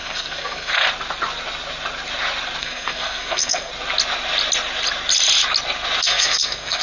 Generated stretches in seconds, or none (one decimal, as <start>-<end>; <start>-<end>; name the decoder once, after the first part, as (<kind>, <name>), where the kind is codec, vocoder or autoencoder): 0.0-0.7 (codec, SNAC); 2.6-3.7; 6.0-6.8